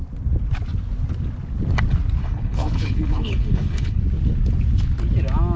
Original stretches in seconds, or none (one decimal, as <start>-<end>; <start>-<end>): 0.0-2.2; 4.0-5.6